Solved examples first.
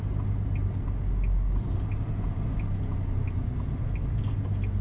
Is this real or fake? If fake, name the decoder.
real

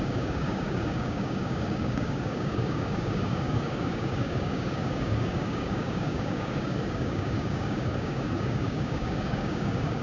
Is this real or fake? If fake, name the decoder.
fake, codec, DAC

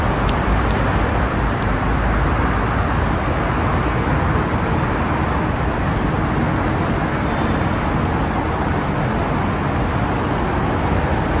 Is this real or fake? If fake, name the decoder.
real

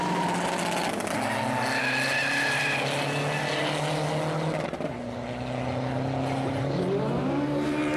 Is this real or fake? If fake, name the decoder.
real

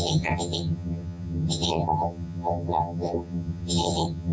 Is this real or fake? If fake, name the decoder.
fake, vocoder, HiFi-GAN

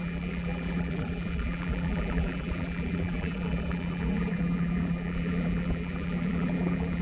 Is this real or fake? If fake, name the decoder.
fake, vocoder, BigVGAN v2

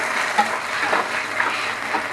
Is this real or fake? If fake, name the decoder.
real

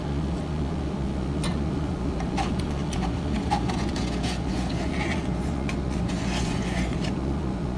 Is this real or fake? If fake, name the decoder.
fake, vocoder, Vocos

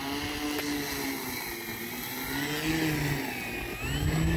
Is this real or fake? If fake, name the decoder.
real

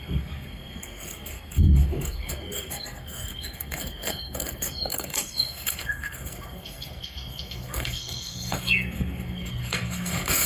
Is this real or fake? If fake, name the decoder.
fake, codec, SNAC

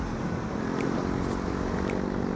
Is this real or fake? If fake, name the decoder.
real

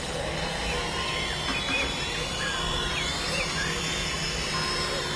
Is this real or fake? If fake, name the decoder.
real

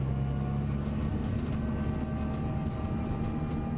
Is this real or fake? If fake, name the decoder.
real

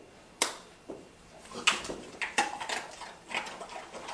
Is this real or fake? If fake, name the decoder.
real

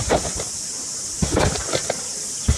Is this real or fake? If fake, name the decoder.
real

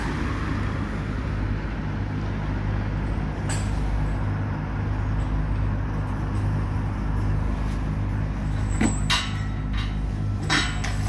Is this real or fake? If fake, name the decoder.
real